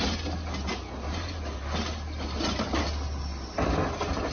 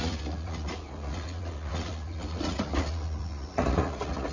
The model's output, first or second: second